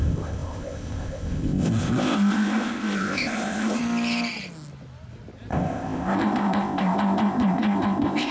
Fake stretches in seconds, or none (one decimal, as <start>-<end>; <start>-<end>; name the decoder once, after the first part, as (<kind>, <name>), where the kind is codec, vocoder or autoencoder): 0.0-3.8 (codec, ZipCodec); 5.5-8.3